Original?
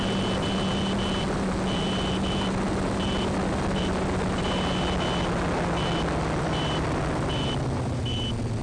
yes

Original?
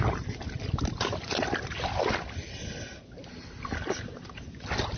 yes